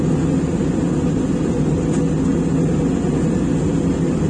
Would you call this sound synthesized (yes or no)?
no